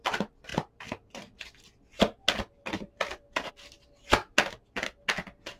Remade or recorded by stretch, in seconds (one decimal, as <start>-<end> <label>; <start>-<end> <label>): 0.0-5.6 recorded

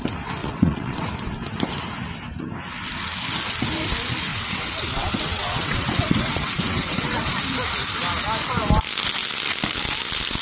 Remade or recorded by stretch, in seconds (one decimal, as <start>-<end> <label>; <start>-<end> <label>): 0.0-0.4 recorded; 0.4-1.1 remade; 1.1-4.3 recorded; 4.3-7.3 remade; 7.3-10.4 recorded

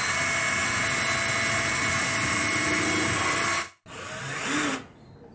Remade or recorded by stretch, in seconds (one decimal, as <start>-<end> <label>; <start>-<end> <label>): 0.0-5.3 recorded

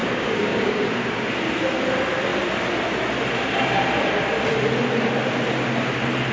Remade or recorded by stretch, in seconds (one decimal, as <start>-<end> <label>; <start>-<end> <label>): 0.0-1.3 remade; 1.3-6.3 recorded

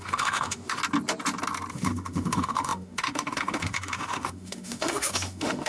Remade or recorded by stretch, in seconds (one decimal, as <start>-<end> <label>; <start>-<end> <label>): 0.0-0.8 remade; 0.8-1.7 recorded; 1.7-5.7 remade

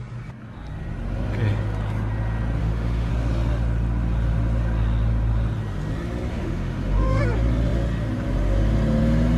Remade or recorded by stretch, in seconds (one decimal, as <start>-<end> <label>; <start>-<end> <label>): 0.0-2.6 recorded; 2.6-3.1 remade; 3.1-6.3 recorded; 6.3-7.2 remade; 7.2-9.4 recorded

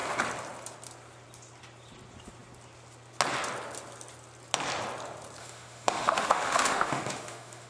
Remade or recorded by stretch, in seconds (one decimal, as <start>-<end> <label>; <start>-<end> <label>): 0.0-5.4 recorded; 5.4-7.7 remade

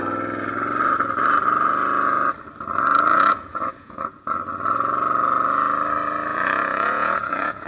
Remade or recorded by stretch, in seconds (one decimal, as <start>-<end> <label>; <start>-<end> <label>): 0.0-3.1 recorded; 3.1-4.4 remade; 4.4-6.3 recorded; 6.3-7.7 remade